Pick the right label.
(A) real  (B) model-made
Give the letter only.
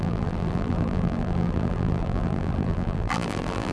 B